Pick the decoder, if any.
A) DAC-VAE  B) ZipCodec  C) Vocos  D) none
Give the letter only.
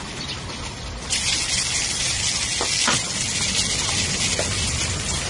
D